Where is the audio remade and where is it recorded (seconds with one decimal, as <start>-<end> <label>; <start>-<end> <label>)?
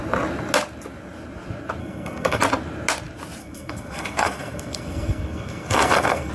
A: 0.0-1.8 recorded; 1.8-2.4 remade; 2.4-3.4 recorded; 3.4-6.3 remade